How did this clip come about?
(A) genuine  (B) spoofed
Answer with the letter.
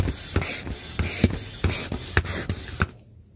A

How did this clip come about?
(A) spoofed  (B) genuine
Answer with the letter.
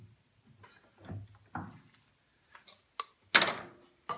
B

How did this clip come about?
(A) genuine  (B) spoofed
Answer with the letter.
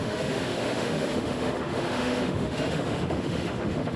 B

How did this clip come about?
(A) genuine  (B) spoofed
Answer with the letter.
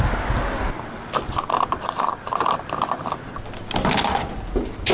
A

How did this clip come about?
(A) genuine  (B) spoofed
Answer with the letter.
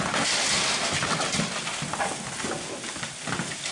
A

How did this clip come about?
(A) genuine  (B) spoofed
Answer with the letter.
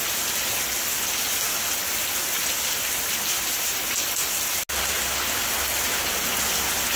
A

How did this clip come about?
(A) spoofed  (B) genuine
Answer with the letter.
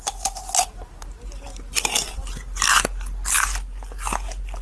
B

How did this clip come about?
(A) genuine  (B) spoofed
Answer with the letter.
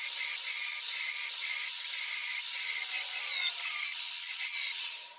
B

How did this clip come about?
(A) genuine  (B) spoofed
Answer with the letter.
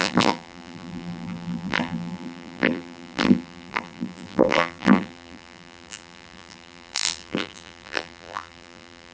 B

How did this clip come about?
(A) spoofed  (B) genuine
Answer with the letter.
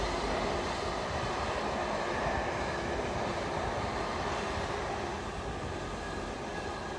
B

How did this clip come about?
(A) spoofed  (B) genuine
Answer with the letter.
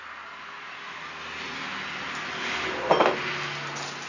B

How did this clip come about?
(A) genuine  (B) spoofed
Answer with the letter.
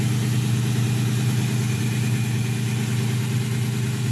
A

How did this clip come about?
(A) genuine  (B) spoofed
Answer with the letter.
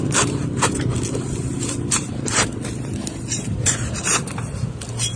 A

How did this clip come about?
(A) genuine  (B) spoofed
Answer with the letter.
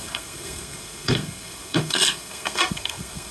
B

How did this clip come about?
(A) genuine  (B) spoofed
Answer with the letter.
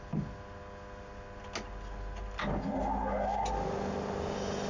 A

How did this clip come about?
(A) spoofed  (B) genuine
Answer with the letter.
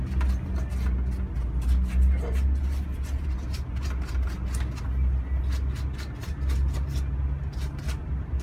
B